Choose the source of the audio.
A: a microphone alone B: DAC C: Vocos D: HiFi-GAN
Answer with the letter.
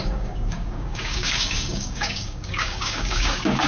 B